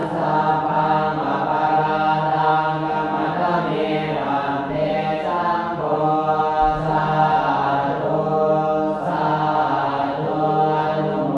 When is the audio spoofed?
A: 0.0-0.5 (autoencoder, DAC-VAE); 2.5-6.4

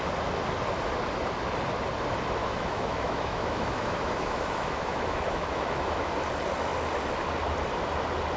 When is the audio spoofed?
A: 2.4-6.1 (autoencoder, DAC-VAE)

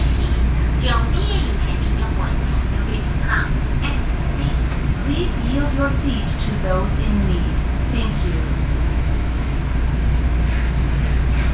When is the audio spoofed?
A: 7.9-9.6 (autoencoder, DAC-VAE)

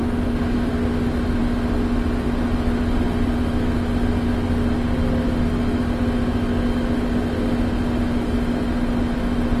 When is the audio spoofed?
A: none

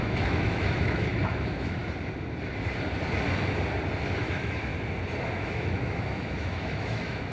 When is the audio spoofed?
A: 0.0-1.8 (autoencoder, DAC-VAE); 4.2-4.7; 5.3-7.3

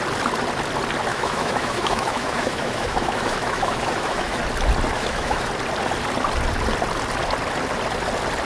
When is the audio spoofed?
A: 1.1-4.4 (autoencoder, DAC-VAE); 4.9-5.5